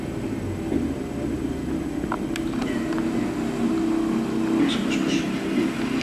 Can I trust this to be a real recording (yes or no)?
yes